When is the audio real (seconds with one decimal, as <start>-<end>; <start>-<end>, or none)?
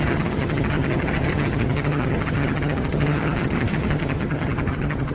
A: none